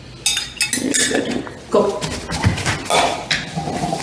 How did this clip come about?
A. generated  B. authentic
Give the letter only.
B